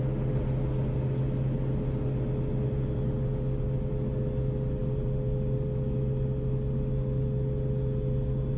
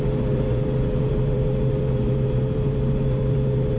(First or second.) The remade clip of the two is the second